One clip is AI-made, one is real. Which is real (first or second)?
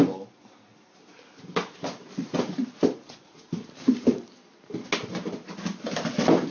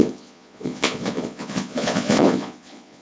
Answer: first